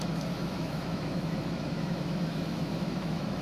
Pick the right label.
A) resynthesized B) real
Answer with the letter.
A